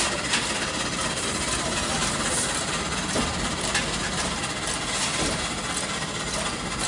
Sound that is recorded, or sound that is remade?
recorded